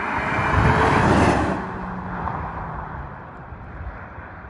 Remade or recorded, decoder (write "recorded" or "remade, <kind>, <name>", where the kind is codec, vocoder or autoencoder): remade, vocoder, BigVGAN v2